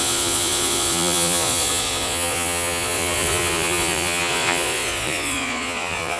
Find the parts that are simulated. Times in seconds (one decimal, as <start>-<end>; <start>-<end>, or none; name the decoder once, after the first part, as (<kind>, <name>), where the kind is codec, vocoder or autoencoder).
0.0-6.2 (vocoder, Vocos)